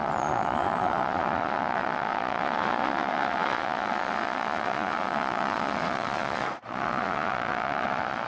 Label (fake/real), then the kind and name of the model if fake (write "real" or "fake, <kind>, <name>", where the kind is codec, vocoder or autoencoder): fake, vocoder, Vocos